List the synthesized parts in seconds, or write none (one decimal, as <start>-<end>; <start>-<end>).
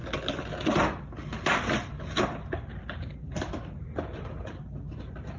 none